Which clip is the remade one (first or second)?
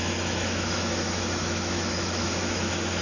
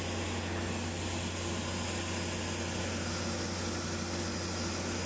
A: first